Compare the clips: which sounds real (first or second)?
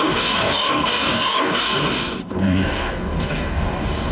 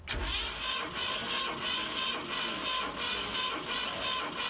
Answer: second